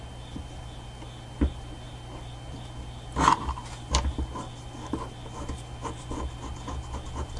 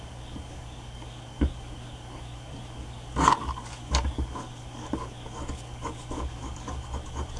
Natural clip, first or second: first